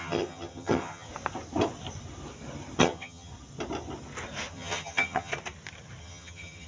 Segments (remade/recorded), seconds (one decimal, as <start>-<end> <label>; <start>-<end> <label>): 0.0-1.1 remade; 1.1-2.8 recorded; 2.8-3.3 remade; 3.3-4.5 recorded; 4.5-5.3 remade; 5.3-6.0 recorded; 6.0-6.7 remade